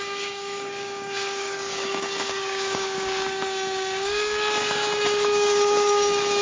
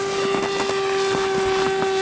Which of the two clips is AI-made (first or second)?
first